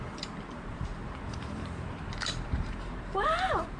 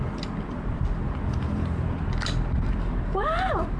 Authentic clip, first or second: second